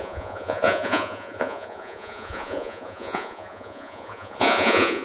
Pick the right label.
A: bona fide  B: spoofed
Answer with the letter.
B